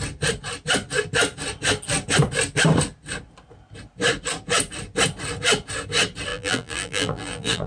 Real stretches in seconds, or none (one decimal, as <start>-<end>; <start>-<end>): 0.0-6.3